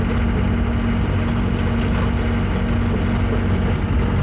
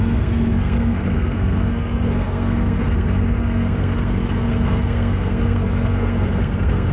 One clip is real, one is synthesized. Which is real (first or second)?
first